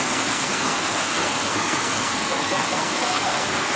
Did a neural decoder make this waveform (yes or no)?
yes